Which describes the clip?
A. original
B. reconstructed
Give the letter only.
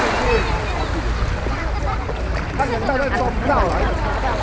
A